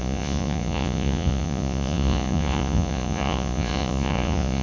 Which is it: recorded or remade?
remade